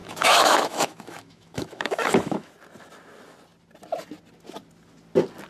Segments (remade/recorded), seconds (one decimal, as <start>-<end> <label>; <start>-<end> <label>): 0.0-2.5 remade; 2.5-5.5 recorded